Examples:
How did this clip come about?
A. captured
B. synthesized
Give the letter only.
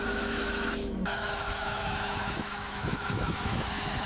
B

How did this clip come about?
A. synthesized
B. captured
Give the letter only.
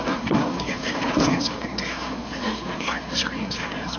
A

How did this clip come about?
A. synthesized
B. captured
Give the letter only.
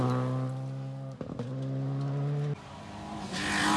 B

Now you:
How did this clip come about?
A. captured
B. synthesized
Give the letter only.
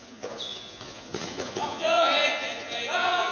B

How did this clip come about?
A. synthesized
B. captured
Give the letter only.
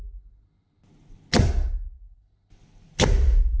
B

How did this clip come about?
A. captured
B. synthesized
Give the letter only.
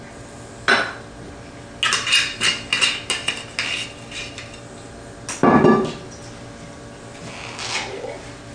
A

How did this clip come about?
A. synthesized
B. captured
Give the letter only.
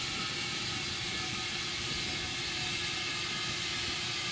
B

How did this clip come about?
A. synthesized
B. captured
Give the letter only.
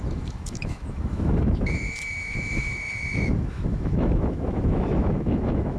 A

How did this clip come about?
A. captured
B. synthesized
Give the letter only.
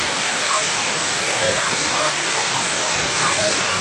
B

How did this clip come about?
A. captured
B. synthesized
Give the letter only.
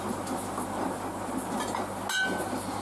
A